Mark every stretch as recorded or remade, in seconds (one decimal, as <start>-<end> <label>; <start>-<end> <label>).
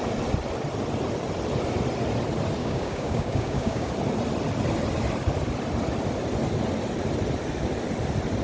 0.0-2.6 recorded; 2.6-3.9 remade; 3.9-8.4 recorded